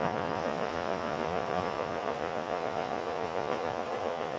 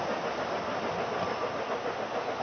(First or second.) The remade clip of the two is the first